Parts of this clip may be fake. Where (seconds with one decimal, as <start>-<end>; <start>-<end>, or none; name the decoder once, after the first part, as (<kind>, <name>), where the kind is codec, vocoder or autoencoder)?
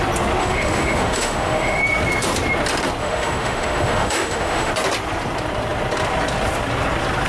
0.4-1.8 (autoencoder, DAC-VAE); 3.0-4.7